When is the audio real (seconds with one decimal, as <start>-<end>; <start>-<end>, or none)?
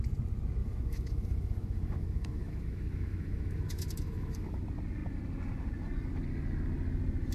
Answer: 0.0-0.6; 4.6-7.3